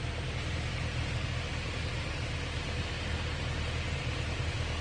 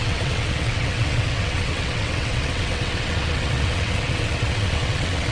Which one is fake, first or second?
second